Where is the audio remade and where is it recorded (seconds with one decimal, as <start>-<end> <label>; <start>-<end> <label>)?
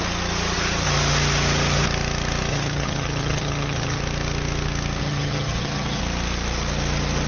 0.0-2.5 recorded; 2.5-4.0 remade; 4.0-5.0 recorded; 5.0-6.0 remade; 6.0-7.3 recorded